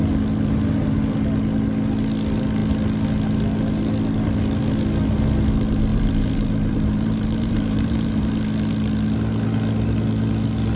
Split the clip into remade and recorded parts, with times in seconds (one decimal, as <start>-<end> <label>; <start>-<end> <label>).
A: 0.0-5.9 recorded; 5.9-8.3 remade; 8.3-10.8 recorded